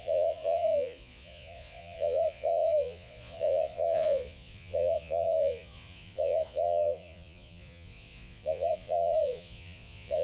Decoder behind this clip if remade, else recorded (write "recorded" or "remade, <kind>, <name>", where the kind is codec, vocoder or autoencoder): remade, vocoder, Vocos